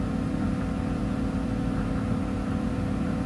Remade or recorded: recorded